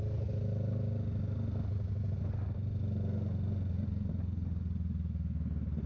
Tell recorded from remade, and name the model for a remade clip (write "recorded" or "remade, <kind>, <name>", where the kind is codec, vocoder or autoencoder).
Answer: recorded